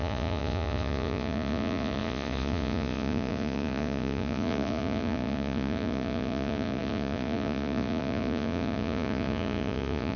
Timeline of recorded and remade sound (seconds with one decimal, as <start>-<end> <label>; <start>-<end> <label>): 0.0-10.2 remade